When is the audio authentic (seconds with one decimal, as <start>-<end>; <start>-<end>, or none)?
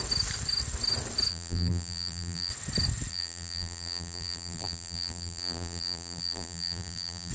0.0-1.3; 2.5-3.1